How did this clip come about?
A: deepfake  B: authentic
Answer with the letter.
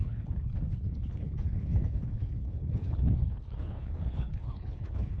A